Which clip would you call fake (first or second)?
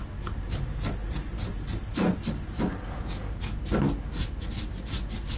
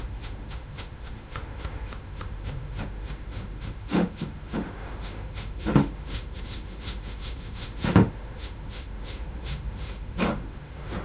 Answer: second